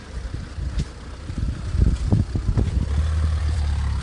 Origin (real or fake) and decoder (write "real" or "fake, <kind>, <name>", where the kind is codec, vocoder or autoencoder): fake, vocoder, BigVGAN v2